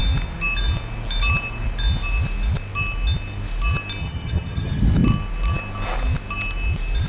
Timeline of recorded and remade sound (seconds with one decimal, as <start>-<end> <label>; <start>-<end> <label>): 0.0-4.0 recorded; 4.0-4.8 remade; 4.8-7.1 recorded